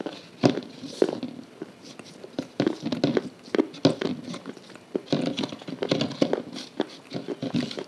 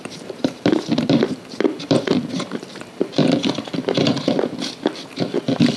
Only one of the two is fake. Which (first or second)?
second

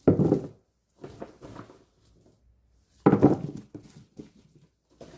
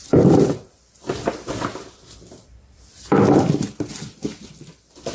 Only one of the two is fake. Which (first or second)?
second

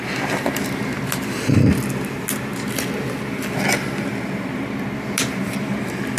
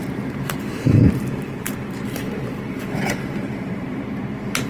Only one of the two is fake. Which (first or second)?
second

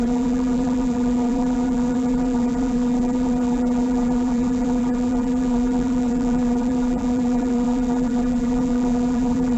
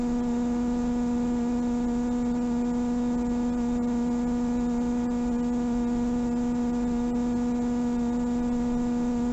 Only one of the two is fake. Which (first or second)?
first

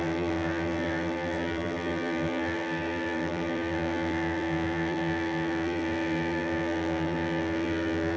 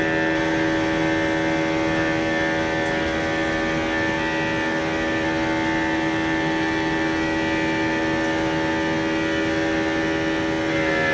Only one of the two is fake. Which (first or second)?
first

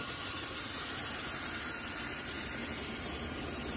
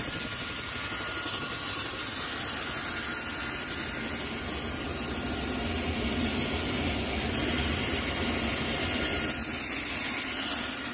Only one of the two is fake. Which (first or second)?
first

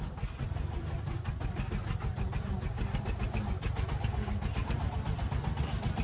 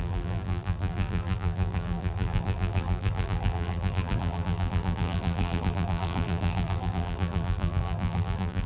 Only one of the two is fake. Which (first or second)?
second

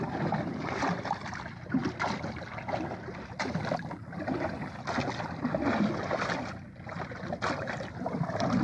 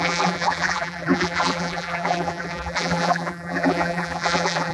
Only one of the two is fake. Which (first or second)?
second